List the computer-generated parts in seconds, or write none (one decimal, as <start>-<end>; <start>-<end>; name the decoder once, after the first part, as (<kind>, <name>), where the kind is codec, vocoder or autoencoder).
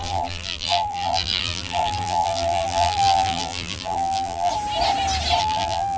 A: 0.0-4.5 (vocoder, BigVGAN v2); 5.4-6.0